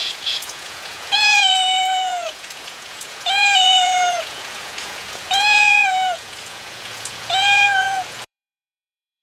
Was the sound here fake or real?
fake